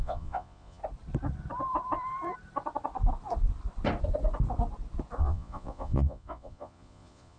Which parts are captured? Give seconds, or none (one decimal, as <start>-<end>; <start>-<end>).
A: 0.8-5.2